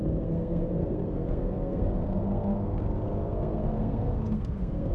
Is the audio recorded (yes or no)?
no